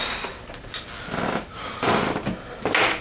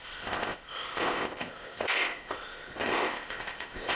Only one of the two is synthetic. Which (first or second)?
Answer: second